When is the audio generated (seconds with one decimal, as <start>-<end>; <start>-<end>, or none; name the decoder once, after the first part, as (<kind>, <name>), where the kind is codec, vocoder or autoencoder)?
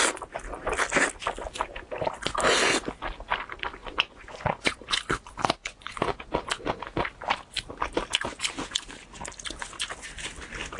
3.8-5.0 (vocoder, Vocos); 5.6-6.2